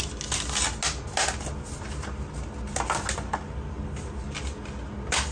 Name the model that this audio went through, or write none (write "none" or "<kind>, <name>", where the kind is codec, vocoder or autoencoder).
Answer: none